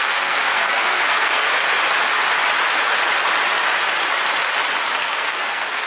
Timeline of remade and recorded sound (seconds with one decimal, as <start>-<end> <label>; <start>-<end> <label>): 0.0-1.5 remade; 1.5-5.0 recorded; 5.0-5.9 remade